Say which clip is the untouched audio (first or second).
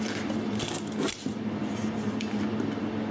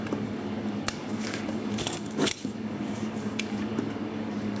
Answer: first